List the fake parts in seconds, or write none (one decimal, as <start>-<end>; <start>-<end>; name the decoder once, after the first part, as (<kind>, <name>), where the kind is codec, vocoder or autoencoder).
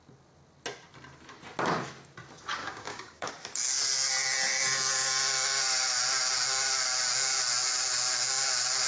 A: 2.6-3.3 (codec, DAC)